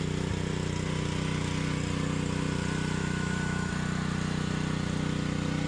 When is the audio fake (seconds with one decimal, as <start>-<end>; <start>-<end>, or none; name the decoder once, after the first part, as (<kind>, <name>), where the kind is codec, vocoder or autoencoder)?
3.0-3.7 (autoencoder, DAC-VAE)